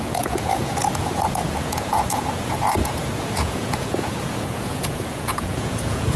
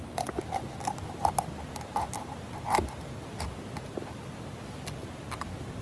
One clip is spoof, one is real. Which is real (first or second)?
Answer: second